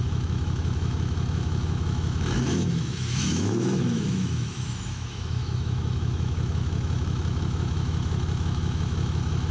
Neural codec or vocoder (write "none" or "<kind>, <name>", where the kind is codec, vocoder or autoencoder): autoencoder, DAC-VAE